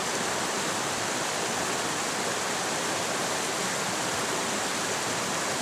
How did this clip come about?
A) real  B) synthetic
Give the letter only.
A